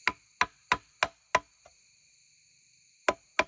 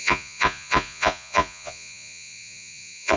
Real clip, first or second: first